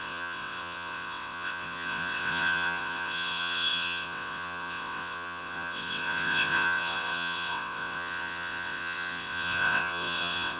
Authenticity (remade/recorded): remade